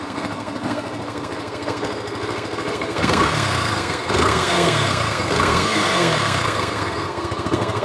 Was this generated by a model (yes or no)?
yes